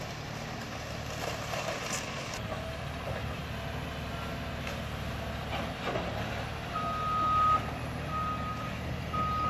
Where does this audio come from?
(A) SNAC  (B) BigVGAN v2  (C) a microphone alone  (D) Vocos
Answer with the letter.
C